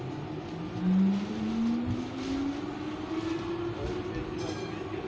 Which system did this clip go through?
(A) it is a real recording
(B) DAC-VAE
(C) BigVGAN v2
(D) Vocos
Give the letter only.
A